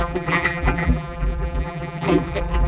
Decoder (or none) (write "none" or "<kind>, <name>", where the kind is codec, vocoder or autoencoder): vocoder, BigVGAN v2